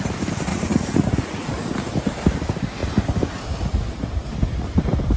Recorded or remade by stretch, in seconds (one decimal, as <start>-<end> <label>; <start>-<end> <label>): 0.0-0.5 recorded; 0.5-1.5 remade; 1.5-5.2 recorded